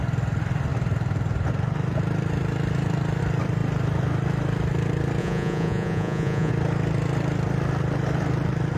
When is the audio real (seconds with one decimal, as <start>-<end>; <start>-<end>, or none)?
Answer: 0.0-5.2; 6.5-8.8